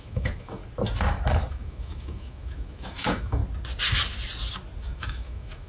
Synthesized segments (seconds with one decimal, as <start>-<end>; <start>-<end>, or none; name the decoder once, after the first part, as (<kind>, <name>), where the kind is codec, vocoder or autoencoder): 0.0-0.6 (autoencoder, DAC-VAE); 1.5-3.4; 4.8-5.7